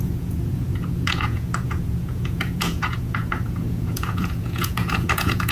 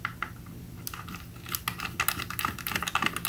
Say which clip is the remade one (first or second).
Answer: first